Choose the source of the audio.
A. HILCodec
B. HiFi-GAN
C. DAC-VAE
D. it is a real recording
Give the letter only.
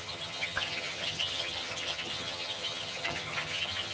B